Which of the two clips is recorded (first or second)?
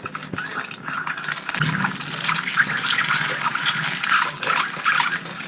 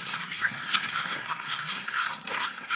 first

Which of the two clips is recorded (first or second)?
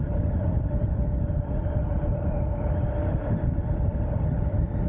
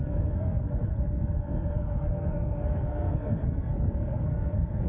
first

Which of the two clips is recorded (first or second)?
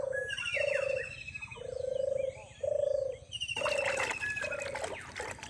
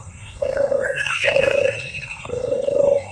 first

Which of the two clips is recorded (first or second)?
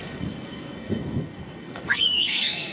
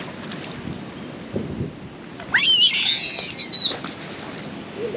second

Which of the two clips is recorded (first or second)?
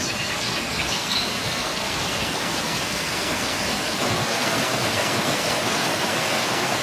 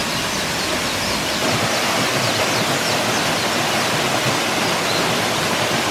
second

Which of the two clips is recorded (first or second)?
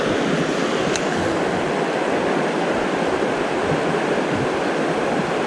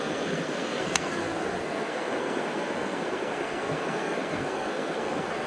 first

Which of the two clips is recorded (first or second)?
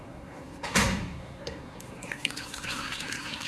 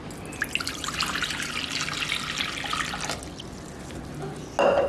second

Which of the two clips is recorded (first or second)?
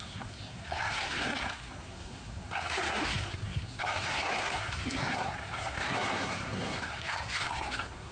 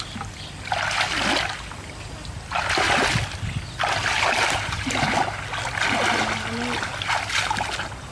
second